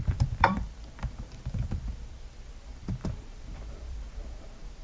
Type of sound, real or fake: fake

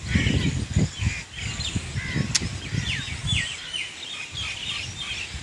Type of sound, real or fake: real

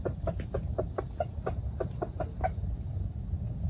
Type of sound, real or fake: real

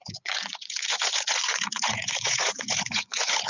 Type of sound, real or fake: fake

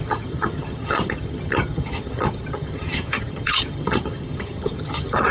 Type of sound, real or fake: fake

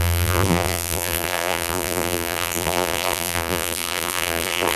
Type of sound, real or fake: fake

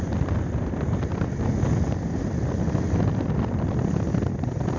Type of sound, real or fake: real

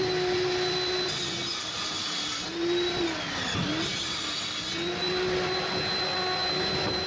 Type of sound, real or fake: real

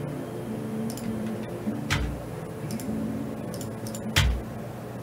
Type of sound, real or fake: real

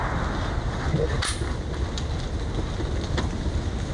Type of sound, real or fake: real